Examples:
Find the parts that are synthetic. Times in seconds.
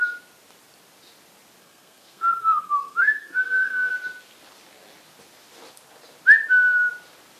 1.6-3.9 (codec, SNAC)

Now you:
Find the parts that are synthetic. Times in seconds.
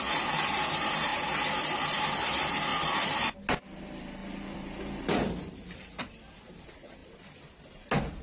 none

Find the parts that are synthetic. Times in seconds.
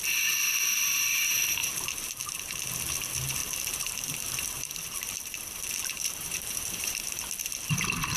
1.6-2.7 (vocoder, BigVGAN v2); 3.4-7.1